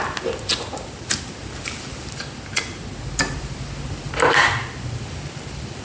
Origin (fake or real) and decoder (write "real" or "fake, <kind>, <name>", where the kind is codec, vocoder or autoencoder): real